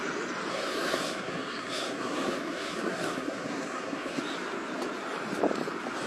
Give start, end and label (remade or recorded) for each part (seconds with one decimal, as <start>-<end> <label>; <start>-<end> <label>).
0.0-0.5 recorded; 0.5-4.2 remade; 4.2-6.1 recorded